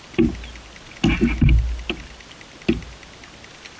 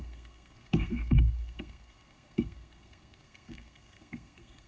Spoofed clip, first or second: second